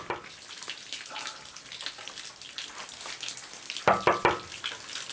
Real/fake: real